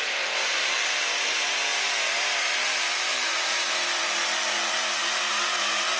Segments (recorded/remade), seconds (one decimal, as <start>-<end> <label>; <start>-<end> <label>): 0.0-6.0 remade